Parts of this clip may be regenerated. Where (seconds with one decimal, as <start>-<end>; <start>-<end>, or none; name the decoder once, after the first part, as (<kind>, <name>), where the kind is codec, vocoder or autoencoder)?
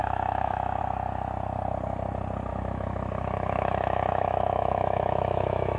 0.0-0.8 (autoencoder, DAC-VAE); 2.5-5.8